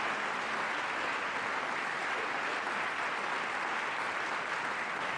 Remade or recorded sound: recorded